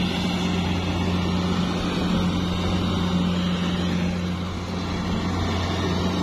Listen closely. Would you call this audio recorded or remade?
recorded